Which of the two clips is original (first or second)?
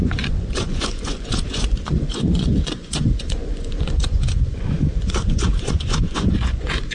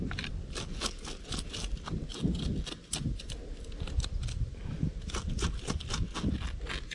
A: second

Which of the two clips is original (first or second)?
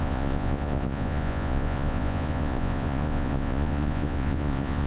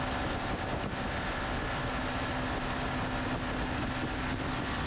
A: second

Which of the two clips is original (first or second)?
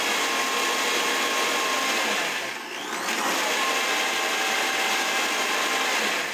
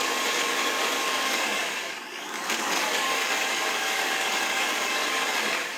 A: first